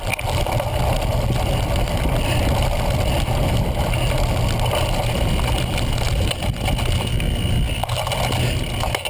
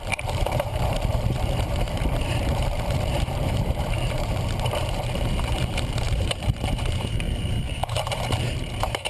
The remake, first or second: second